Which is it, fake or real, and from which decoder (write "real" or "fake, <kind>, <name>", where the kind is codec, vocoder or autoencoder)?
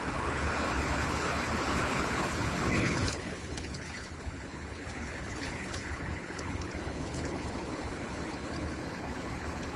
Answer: fake, codec, HILCodec